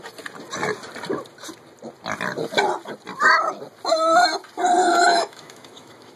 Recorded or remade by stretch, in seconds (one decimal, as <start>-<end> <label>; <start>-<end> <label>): 0.0-4.8 recorded; 4.8-6.2 remade